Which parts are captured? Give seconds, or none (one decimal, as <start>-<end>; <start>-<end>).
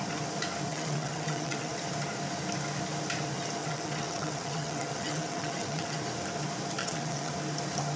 0.0-0.7; 1.7-3.6; 6.0-6.8; 7.3-8.0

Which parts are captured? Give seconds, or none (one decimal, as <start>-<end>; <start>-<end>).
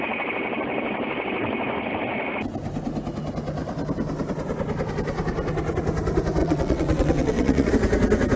0.0-6.4; 7.7-8.4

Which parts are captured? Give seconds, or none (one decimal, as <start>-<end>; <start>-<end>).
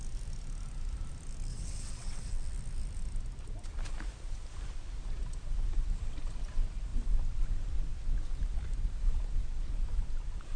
0.0-1.5; 2.3-10.6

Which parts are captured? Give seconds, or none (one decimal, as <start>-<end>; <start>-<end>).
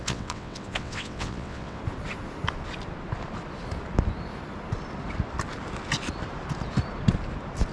1.8-7.7